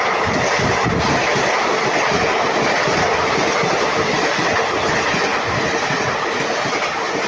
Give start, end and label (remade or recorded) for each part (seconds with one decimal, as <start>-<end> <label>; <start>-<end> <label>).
0.0-7.3 recorded